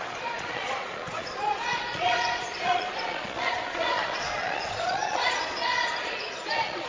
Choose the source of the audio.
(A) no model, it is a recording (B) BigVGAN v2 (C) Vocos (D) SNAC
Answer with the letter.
C